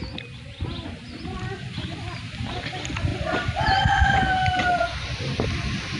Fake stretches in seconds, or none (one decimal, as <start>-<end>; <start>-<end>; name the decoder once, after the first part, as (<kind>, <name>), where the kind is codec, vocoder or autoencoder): 0.0-6.0 (vocoder, BigVGAN v2)